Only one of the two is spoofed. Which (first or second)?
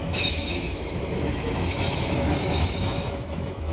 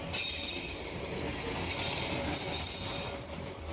first